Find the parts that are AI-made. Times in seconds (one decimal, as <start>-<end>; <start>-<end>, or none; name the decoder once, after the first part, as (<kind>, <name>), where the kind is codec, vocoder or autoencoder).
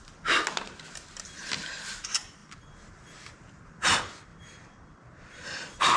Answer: 4.3-6.0 (vocoder, BigVGAN v2)